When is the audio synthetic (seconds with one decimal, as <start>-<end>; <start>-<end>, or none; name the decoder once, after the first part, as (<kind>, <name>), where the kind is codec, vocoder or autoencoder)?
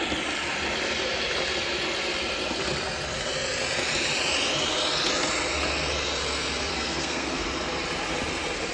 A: 6.7-7.4 (codec, SNAC)